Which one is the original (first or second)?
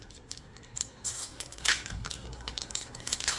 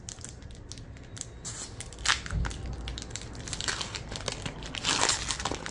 second